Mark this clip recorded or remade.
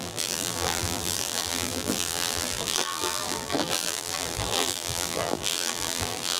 remade